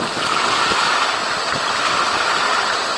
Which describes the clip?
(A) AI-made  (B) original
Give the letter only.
B